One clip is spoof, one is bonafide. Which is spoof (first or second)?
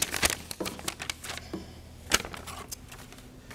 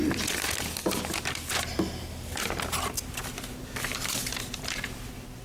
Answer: second